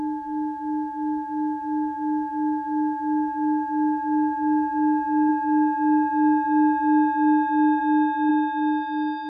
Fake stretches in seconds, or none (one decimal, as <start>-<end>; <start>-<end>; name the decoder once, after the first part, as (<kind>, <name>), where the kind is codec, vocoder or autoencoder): none